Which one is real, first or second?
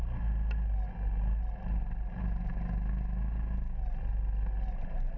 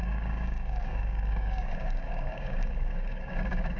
first